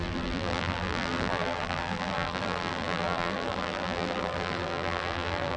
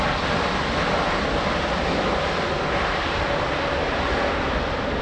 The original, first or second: second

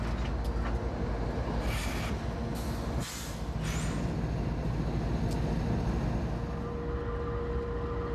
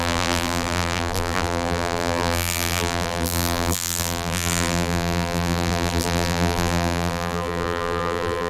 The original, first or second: first